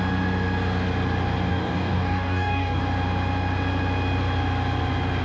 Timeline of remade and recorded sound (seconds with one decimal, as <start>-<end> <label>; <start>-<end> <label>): 0.0-1.5 recorded; 1.5-2.8 remade; 2.8-5.2 recorded